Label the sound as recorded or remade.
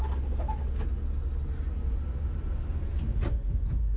recorded